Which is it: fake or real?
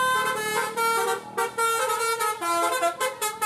real